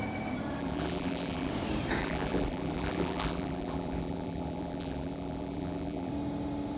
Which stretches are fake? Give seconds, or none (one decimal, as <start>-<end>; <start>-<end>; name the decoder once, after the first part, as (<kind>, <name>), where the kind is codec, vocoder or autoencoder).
0.6-1.5 (vocoder, BigVGAN v2); 2.0-6.1